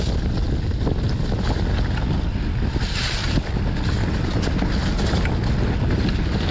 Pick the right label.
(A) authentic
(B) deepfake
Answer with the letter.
A